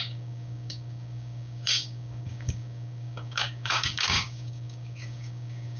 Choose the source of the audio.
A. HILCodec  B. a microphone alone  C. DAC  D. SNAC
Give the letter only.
C